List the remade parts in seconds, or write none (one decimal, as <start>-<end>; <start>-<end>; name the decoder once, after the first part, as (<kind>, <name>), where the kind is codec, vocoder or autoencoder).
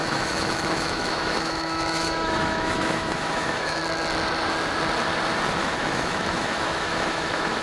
0.0-3.8 (autoencoder, DAC-VAE); 5.6-7.6